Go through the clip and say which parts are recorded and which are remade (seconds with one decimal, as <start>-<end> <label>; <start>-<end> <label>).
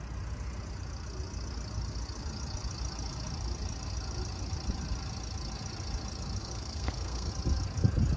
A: 0.0-6.4 recorded; 6.4-7.3 remade; 7.3-8.2 recorded